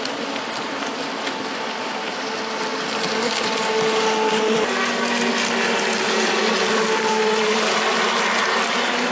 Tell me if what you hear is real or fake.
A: real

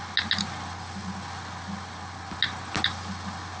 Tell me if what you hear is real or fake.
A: real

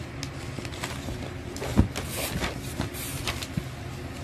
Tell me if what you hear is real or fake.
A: real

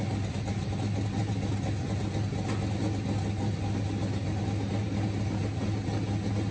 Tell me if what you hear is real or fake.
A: real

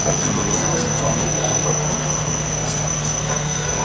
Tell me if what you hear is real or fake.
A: fake